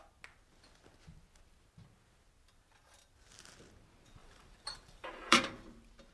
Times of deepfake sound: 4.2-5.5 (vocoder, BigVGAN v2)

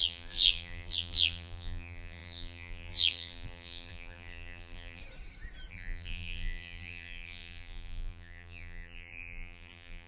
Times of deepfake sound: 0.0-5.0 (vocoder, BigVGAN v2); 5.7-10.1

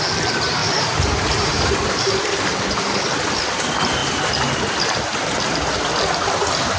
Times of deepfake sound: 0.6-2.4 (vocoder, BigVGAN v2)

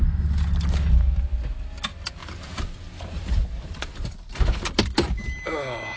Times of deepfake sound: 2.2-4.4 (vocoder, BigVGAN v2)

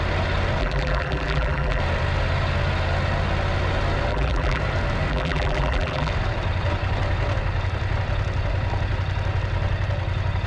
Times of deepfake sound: 0.6-1.8 (vocoder, BigVGAN v2); 4.1-4.6; 5.1-6.1

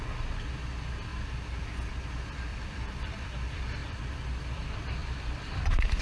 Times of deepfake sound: 2.5-3.1 (vocoder, BigVGAN v2); 3.8-4.6; 5.0-5.6